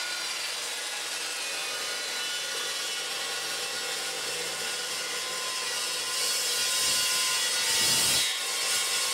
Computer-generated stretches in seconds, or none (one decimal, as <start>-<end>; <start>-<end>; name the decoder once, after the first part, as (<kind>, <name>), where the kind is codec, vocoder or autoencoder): none